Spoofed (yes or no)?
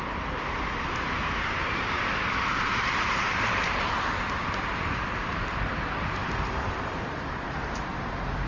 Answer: yes